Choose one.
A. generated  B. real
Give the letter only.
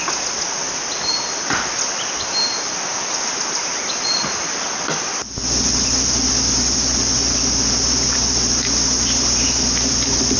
B